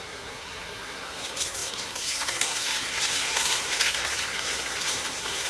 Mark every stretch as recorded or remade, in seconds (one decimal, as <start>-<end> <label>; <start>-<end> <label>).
0.0-5.5 remade